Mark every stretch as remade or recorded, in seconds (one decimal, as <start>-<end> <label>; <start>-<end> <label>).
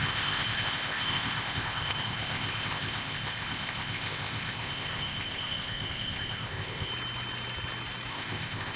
0.0-6.9 remade; 6.9-8.1 recorded; 8.1-8.8 remade